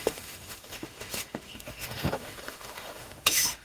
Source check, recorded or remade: remade